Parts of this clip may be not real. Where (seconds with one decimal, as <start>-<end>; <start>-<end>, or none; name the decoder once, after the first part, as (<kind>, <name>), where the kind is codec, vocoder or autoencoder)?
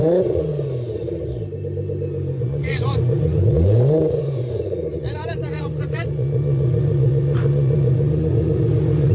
0.0-0.5 (vocoder, Vocos); 2.4-9.1